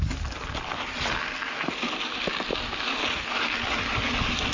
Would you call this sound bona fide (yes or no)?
yes